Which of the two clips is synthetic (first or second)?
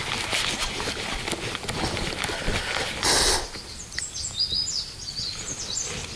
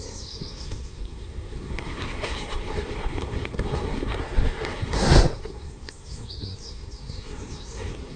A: second